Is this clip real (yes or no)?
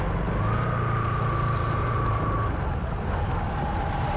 yes